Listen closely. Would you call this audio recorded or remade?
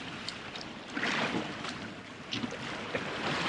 recorded